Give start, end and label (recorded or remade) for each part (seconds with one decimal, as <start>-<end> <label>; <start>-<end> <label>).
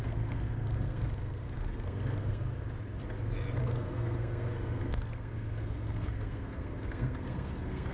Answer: 0.0-2.4 remade; 2.4-3.6 recorded; 3.6-7.9 remade